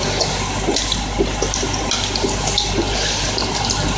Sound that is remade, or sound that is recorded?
remade